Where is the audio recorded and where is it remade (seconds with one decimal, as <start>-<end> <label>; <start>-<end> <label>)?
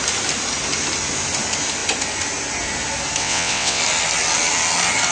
0.0-3.2 recorded; 3.2-3.8 remade; 3.8-5.1 recorded